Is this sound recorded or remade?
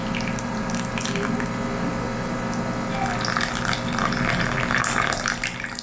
recorded